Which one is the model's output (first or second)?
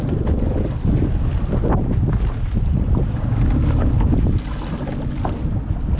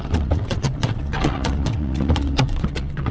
second